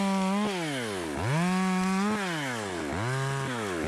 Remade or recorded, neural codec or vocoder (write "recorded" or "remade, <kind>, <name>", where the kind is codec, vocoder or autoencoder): recorded